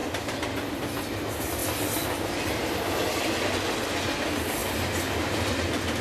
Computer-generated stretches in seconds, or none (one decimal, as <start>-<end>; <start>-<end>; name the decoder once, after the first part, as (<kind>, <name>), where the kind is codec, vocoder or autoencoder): 1.6-2.3 (vocoder, BigVGAN v2); 4.6-5.5